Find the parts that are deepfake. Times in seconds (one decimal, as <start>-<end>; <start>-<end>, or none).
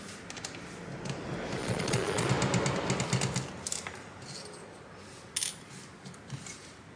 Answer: 1.6-2.3